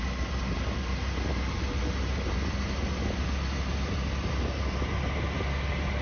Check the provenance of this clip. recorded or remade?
recorded